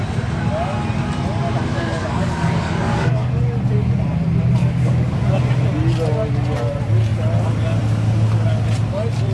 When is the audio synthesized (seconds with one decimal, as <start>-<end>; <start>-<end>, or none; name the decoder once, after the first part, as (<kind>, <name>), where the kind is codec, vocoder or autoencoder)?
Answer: 1.7-3.4 (codec, DAC); 4.6-5.2